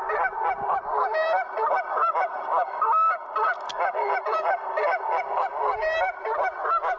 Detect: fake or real real